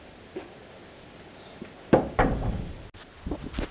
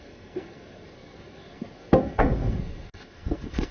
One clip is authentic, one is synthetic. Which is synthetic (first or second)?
second